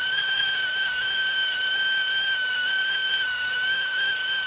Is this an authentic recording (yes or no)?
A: no